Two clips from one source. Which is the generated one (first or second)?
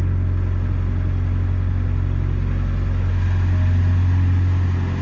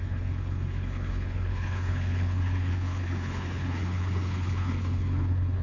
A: second